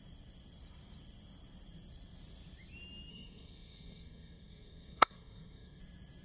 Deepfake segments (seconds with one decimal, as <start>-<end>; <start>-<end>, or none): 3.1-5.8